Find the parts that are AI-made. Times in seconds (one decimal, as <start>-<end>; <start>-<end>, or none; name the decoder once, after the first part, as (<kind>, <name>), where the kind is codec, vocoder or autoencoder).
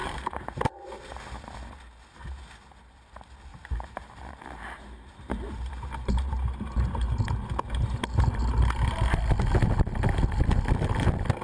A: 0.0-0.6 (vocoder, BigVGAN v2); 3.5-7.2